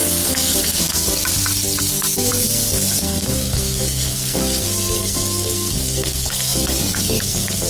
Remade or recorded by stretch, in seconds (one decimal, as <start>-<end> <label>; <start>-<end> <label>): 0.0-1.1 remade; 1.1-1.8 recorded; 1.8-7.7 remade